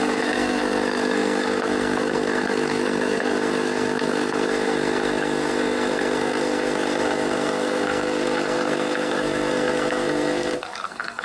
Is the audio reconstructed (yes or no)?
yes